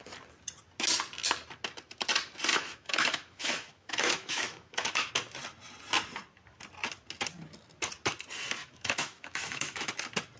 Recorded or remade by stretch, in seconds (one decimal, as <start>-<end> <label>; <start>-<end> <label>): 0.0-2.5 recorded; 2.5-5.1 remade; 5.1-8.6 recorded; 8.6-9.9 remade; 9.9-10.4 recorded